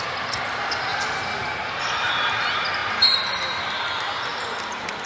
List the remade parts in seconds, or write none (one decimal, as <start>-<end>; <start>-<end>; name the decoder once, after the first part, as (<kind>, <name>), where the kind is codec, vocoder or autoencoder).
2.8-3.7 (vocoder, BigVGAN v2); 4.3-5.1